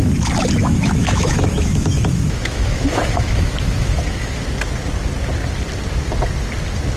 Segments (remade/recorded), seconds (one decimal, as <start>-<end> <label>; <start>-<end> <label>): 0.0-0.6 recorded; 0.6-4.4 remade; 4.4-7.0 recorded